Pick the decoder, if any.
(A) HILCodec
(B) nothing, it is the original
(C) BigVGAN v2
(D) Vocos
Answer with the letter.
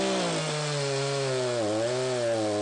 B